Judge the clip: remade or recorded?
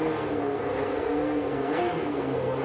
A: remade